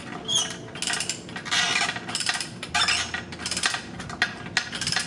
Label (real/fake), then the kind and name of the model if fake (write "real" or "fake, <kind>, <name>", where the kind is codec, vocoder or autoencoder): real